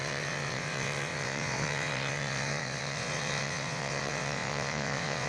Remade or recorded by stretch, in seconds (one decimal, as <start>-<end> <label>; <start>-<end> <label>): 0.0-5.3 remade